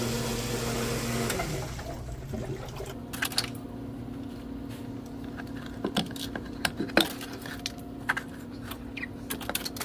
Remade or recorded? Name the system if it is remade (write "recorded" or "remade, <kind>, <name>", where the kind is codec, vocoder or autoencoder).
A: recorded